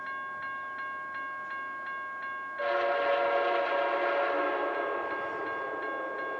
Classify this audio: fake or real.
real